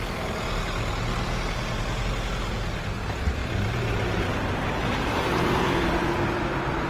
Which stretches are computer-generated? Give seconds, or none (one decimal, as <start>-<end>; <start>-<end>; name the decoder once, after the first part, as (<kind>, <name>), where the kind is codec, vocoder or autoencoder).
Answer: 1.1-2.1 (vocoder, BigVGAN v2); 3.4-5.7